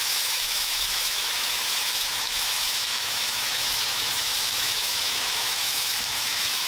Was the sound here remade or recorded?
remade